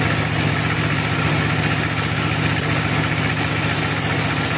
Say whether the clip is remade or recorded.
recorded